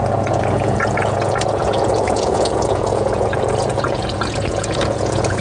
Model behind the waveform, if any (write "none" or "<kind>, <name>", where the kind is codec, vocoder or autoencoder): vocoder, Vocos